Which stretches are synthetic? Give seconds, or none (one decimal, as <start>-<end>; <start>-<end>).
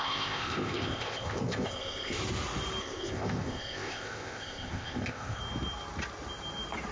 0.0-2.2; 2.8-5.4